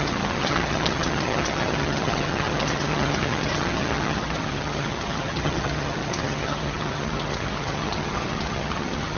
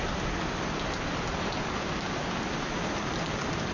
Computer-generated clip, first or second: first